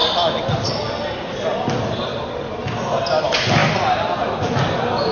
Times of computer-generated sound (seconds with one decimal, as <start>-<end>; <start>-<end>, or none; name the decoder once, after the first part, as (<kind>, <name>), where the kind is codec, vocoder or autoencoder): none